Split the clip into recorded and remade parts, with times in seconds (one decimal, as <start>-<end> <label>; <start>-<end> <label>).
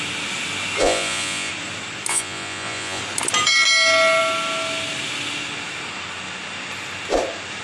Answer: 0.0-0.8 recorded; 0.8-1.5 remade; 1.5-2.1 recorded; 2.1-3.0 remade; 3.0-7.6 recorded